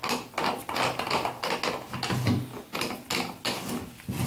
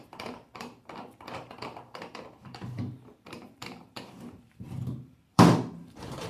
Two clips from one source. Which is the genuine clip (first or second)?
first